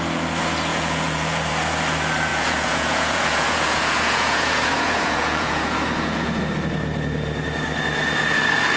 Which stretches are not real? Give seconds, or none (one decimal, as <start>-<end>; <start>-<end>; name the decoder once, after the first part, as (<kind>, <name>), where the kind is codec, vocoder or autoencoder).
0.7-1.5 (vocoder, Vocos); 2.3-6.4